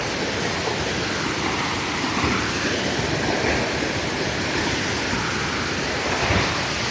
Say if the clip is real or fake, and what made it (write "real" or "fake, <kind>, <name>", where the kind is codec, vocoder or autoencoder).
real